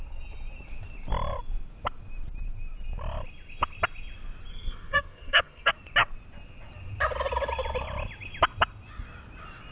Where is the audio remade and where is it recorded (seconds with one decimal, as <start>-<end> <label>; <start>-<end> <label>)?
0.0-4.5 recorded; 4.5-5.7 remade; 5.7-9.7 recorded